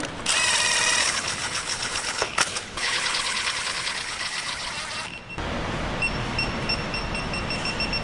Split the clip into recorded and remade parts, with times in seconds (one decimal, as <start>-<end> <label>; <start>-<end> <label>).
0.0-1.0 recorded; 1.0-4.7 remade; 4.7-8.0 recorded